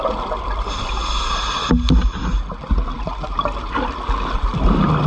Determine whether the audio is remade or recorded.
recorded